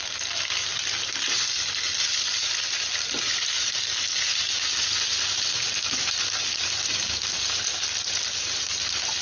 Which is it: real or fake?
real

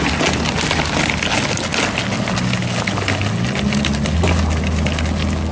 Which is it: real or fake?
real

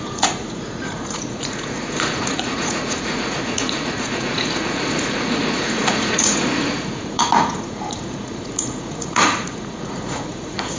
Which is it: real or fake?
fake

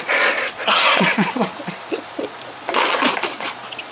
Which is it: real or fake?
fake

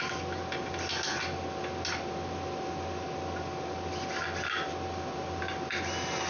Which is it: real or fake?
real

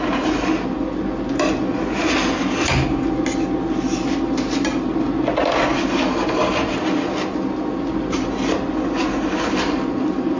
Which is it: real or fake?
real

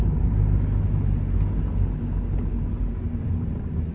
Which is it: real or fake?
real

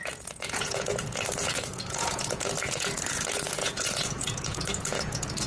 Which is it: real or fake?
fake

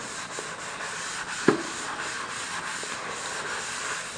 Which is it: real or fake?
real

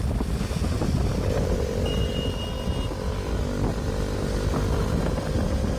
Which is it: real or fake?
real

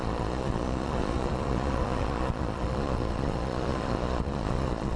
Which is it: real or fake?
fake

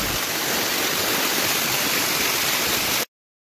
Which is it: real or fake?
real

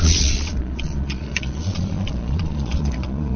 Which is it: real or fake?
fake